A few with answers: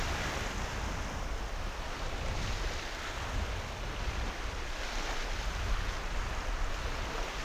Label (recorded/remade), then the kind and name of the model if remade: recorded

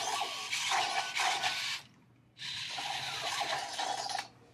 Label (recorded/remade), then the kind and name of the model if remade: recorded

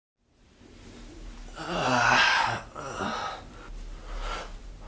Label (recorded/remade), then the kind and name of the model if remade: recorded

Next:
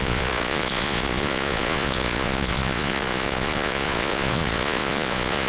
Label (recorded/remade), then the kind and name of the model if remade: remade, vocoder, Vocos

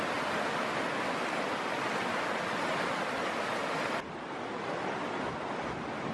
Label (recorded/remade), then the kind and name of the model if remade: recorded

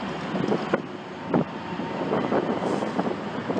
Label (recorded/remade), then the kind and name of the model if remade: recorded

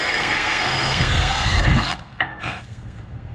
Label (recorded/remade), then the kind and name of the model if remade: remade, codec, SNAC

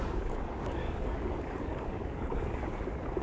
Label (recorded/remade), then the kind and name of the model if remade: remade, codec, DAC